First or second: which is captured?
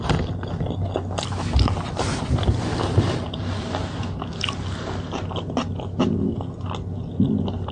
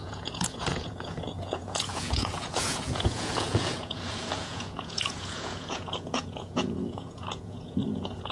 first